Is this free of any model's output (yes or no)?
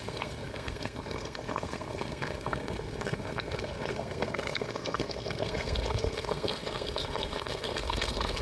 no